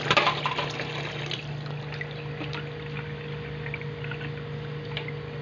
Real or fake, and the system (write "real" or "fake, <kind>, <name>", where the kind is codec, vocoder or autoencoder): real